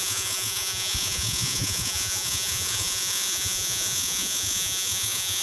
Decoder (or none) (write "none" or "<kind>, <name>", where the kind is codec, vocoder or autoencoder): vocoder, Vocos